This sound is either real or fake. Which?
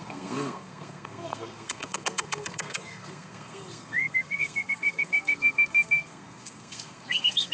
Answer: fake